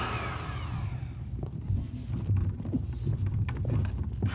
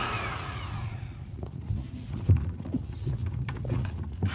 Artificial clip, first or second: second